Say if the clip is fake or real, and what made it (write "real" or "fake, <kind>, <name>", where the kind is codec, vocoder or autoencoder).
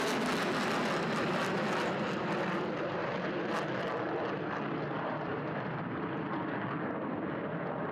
real